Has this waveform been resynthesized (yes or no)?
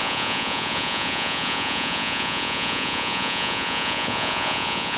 yes